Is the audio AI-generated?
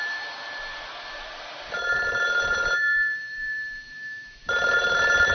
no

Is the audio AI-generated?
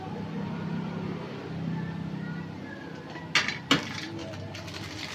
no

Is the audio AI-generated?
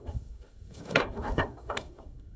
yes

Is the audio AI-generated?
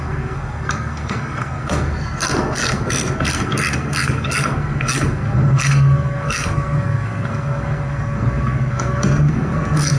yes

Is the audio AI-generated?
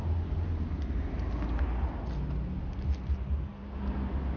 no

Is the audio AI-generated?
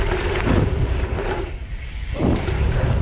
no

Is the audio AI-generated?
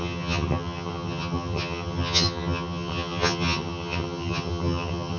yes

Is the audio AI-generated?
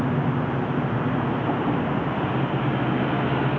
no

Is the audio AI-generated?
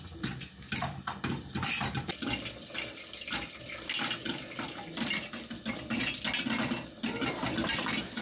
no